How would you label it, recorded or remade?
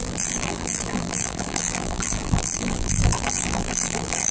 remade